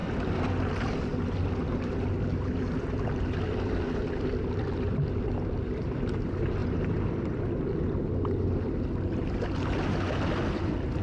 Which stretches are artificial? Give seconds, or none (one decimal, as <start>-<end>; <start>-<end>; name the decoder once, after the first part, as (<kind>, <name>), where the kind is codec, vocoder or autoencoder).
none